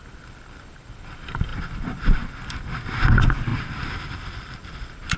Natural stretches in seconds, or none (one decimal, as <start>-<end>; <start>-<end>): 0.0-5.2